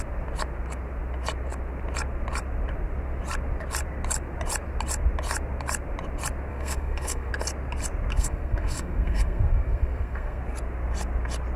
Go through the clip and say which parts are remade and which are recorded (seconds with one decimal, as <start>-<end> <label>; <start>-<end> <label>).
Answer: 0.0-6.5 recorded; 6.5-7.3 remade; 7.3-8.1 recorded; 8.1-10.4 remade; 10.4-11.6 recorded